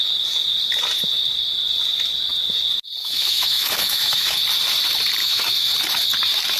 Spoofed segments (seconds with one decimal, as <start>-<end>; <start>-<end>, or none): 3.0-4.4; 5.2-5.7